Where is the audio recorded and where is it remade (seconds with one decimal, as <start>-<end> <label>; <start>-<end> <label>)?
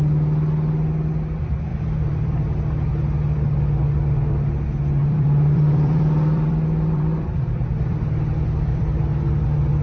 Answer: 0.0-1.7 recorded; 1.7-2.4 remade; 2.4-5.0 recorded; 5.0-9.0 remade; 9.0-9.8 recorded